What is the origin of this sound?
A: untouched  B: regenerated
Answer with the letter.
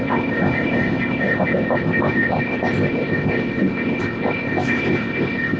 B